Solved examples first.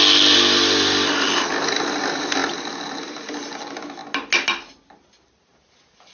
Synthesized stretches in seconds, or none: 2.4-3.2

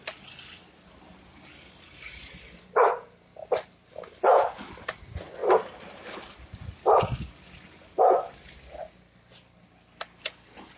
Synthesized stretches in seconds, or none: none

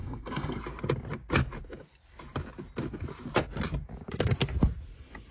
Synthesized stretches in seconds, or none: 0.0-0.6

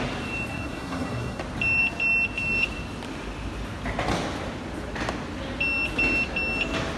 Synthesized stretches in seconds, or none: 0.5-1.4

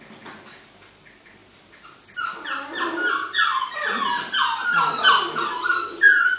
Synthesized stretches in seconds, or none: none

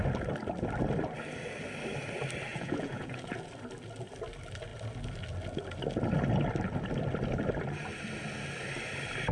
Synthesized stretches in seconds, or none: 2.5-3.5

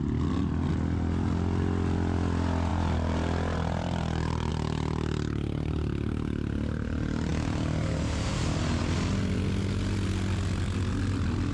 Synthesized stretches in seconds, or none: 2.7-4.5

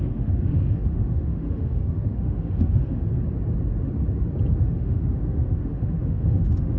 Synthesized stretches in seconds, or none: 0.0-3.0; 4.6-6.8